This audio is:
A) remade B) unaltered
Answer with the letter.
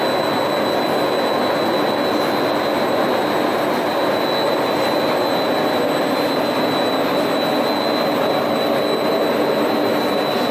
B